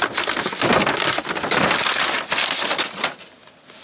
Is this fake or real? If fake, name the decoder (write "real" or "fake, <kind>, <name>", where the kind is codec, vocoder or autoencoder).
real